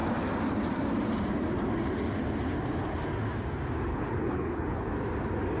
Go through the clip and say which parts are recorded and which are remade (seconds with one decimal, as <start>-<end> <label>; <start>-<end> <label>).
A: 0.0-3.9 recorded; 3.9-4.9 remade; 4.9-5.6 recorded